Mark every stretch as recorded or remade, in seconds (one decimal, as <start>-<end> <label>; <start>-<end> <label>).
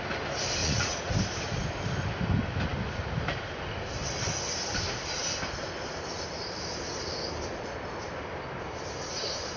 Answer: 0.0-0.6 recorded; 0.6-1.1 remade; 1.1-9.6 recorded